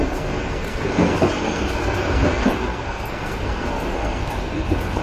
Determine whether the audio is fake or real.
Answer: fake